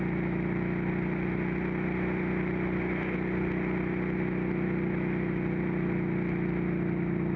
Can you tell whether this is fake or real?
real